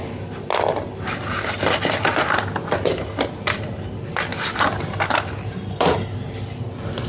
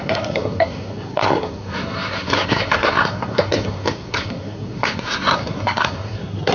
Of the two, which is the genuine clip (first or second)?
first